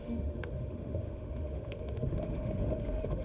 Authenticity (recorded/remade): remade